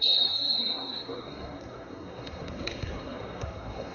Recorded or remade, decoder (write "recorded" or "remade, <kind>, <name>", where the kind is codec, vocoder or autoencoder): remade, codec, SNAC